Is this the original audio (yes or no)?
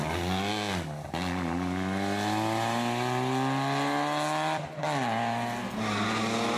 yes